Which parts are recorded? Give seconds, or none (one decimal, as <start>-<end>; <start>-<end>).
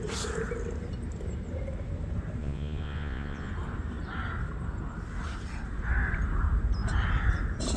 0.0-2.4; 3.5-7.8